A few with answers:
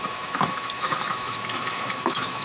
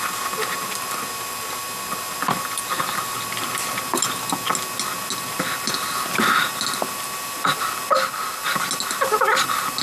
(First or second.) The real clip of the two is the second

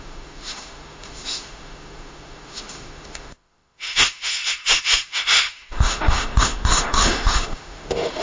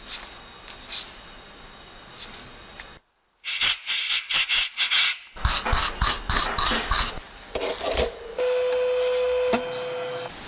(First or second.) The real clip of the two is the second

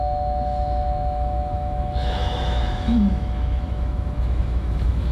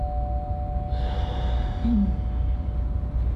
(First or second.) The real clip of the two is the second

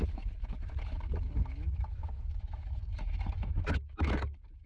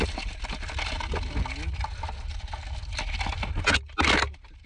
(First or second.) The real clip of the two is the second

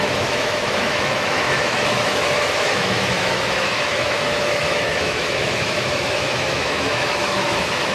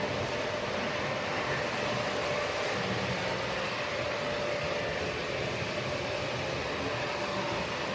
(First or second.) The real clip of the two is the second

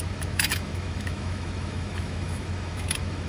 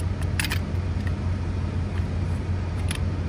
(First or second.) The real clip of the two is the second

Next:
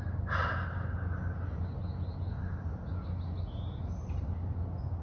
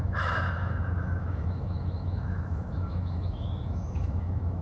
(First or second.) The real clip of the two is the first